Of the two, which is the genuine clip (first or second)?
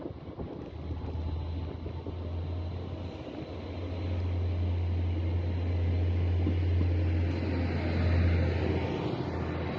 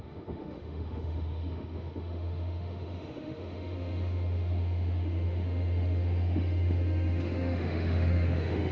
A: first